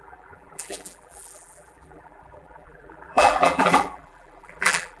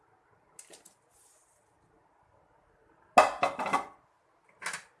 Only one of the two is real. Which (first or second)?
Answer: second